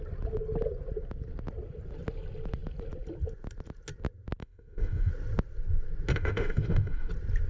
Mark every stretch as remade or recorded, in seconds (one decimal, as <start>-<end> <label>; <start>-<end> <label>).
0.0-4.4 recorded; 4.4-5.1 remade; 5.1-6.1 recorded; 6.1-7.1 remade; 7.1-7.5 recorded